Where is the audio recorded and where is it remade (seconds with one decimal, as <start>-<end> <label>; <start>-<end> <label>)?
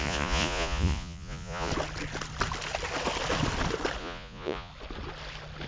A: 0.0-1.7 remade; 1.7-4.0 recorded; 4.0-4.7 remade; 4.7-5.7 recorded